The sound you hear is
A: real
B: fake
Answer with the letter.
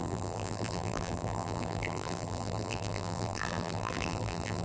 B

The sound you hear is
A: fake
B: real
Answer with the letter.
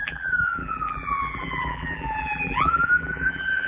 A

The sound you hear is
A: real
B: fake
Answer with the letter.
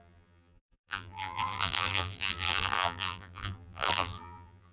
B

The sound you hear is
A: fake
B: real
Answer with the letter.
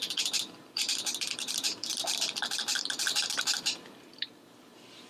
A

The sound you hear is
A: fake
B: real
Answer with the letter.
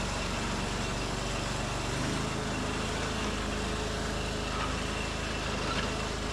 B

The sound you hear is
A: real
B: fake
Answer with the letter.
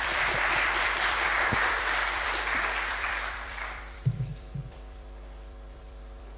B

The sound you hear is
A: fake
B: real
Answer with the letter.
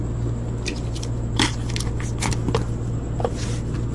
B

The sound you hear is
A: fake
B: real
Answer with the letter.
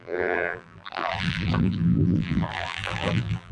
A